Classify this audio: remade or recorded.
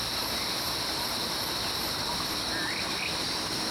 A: recorded